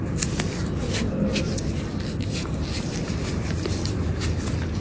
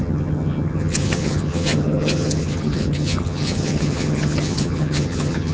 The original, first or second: first